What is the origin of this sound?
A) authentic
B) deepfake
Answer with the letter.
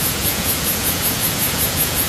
B